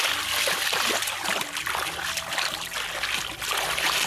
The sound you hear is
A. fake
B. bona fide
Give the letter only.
B